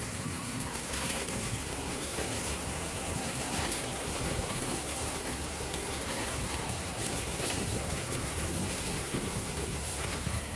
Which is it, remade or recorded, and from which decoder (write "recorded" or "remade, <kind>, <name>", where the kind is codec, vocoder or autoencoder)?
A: remade, codec, SNAC